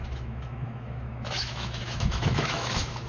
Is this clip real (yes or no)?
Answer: no